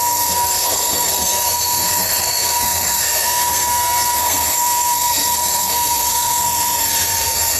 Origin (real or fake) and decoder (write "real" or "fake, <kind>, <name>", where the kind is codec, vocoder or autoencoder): fake, codec, SNAC